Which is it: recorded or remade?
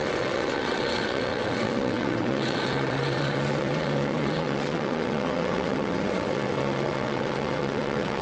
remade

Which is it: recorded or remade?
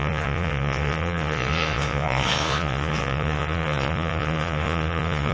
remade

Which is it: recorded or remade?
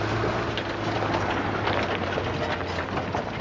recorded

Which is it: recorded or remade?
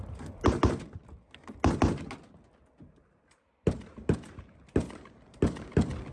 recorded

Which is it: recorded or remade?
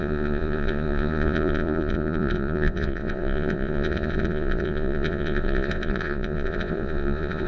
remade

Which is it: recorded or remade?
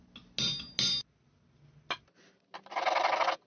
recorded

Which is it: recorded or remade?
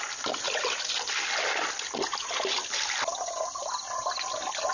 recorded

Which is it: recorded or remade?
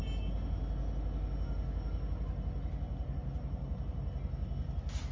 recorded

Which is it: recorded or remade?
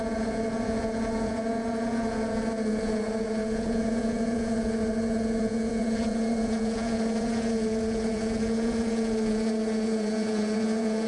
remade